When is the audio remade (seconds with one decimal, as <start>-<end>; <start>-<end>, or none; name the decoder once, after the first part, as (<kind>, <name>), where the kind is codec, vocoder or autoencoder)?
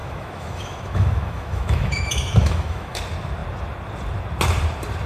0.0-3.0 (autoencoder, DAC-VAE)